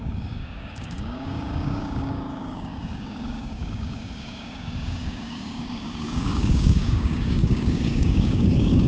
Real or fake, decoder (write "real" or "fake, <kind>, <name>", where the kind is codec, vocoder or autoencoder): fake, codec, DAC